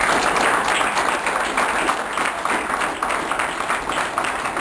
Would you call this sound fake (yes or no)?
no